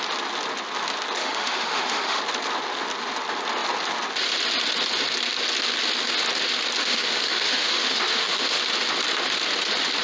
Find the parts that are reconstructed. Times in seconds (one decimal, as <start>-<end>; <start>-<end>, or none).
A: 1.2-2.2; 6.8-8.6

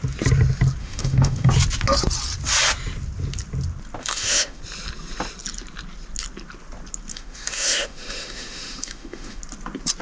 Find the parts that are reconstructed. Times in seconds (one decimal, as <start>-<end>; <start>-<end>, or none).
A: 0.8-1.5; 4.0-4.6; 7.1-9.4

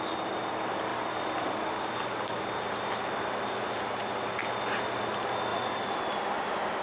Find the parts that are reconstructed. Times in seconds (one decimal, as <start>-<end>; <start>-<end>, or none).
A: none

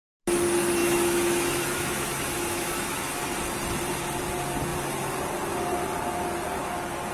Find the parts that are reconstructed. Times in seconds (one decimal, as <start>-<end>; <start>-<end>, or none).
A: 0.8-3.2

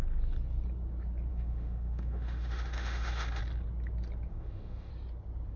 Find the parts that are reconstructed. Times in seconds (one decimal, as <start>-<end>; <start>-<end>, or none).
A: 1.3-3.4; 4.3-4.9

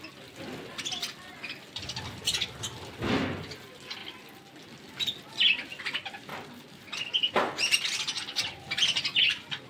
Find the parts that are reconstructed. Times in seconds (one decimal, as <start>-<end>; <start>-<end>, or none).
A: none

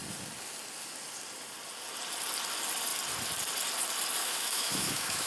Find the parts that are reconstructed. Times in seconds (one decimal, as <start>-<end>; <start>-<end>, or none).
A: 4.2-5.3